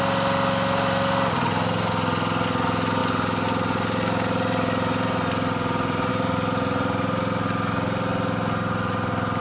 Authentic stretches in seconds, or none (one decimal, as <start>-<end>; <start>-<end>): 0.0-9.4